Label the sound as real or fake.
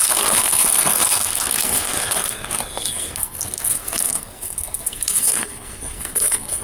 fake